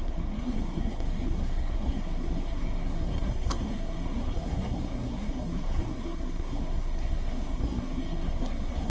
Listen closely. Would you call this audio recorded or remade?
remade